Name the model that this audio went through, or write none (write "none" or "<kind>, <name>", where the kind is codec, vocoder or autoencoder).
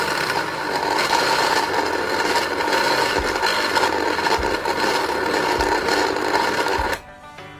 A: none